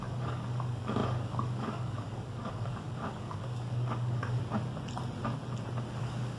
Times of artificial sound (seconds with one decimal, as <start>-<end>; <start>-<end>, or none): 0.0-4.4; 6.0-6.4